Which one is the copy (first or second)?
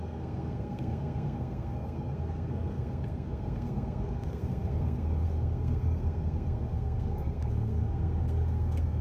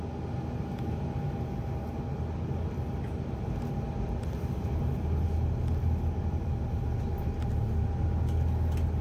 first